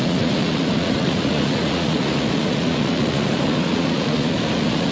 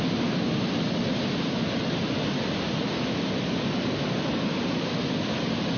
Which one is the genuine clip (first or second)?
second